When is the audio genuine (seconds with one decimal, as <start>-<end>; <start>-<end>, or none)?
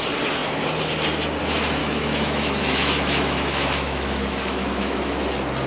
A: 0.0-1.8; 5.2-5.7